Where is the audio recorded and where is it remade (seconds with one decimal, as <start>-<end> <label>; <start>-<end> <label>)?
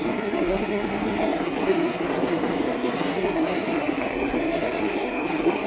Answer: 0.0-5.7 remade